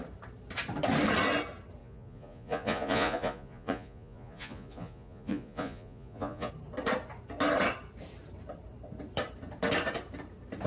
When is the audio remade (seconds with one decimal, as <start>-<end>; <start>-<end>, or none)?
1.8-6.5

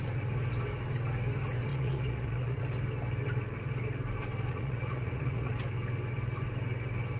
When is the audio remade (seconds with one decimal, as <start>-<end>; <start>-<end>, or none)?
1.7-2.6; 4.5-5.5

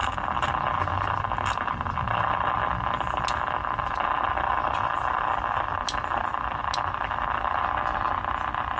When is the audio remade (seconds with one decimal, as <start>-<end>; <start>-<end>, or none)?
none

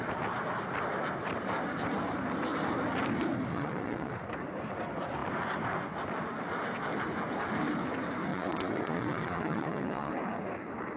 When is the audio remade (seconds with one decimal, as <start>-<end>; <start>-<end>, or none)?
3.5-4.1; 8.3-10.1

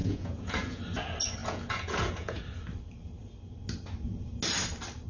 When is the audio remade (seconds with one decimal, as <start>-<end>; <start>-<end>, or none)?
0.0-0.8; 1.4-2.4

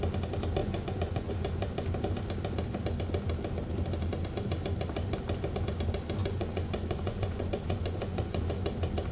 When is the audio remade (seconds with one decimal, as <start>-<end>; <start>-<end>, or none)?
0.6-1.3; 6.2-8.5

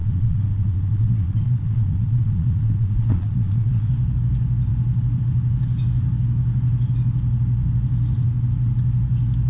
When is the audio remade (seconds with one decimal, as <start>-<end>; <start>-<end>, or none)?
0.0-3.9